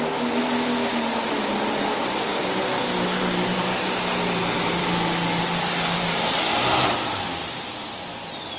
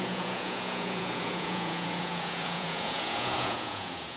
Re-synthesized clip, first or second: second